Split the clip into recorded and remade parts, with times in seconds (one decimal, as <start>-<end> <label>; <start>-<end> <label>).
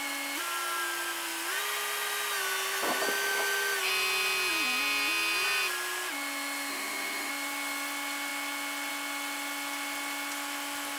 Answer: 0.0-6.7 recorded; 6.7-7.3 remade; 7.3-11.0 recorded